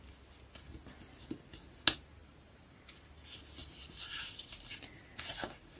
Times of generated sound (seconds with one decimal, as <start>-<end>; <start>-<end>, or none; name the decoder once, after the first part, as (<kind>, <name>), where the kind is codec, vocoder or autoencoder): 2.2-2.9 (vocoder, BigVGAN v2); 3.6-4.2